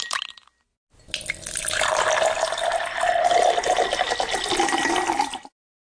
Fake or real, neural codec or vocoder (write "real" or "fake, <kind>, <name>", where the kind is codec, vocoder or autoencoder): real